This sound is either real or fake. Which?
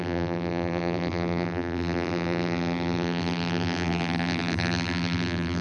fake